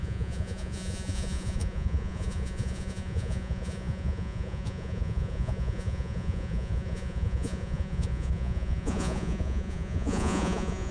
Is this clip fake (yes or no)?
yes